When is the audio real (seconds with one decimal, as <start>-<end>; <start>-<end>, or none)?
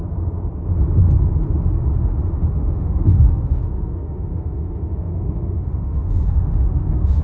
0.0-2.6